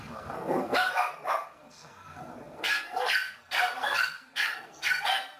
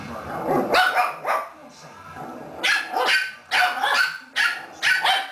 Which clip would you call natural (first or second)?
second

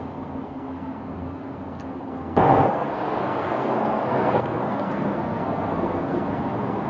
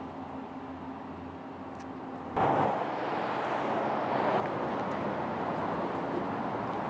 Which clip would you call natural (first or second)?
second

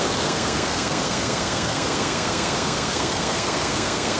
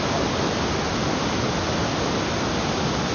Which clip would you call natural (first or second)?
second